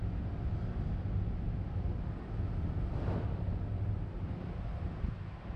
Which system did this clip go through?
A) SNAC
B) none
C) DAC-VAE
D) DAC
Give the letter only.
B